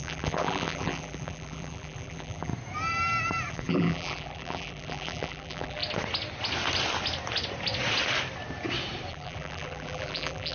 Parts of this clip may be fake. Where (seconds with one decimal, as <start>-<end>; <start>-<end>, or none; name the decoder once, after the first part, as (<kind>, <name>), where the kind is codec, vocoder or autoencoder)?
0.0-2.5 (vocoder, BigVGAN v2); 3.5-5.8; 9.1-10.5

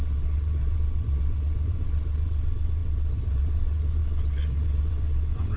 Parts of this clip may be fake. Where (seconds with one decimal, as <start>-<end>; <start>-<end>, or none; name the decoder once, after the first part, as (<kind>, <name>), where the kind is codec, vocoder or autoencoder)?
0.0-5.6 (vocoder, WaveNeXt)